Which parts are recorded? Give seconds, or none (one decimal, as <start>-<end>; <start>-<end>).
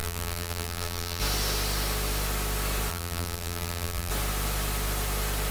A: 1.2-2.9; 4.1-5.5